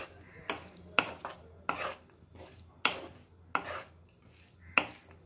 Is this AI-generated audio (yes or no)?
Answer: no